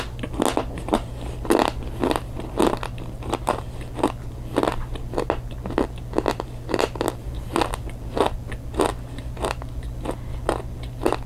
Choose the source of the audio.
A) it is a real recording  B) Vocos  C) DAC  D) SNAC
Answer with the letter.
A